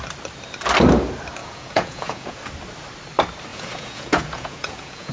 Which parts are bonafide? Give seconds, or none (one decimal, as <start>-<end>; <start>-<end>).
0.0-1.4; 2.4-3.5

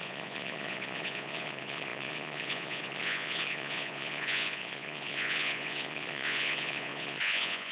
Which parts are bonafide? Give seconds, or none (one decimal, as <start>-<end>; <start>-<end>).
none

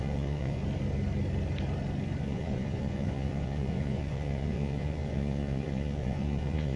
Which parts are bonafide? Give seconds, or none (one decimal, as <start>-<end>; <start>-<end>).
0.6-2.2

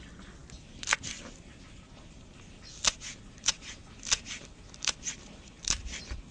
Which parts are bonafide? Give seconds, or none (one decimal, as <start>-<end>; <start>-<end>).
0.0-6.3